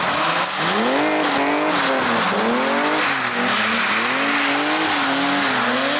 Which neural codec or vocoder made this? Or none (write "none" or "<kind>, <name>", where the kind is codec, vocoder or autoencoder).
none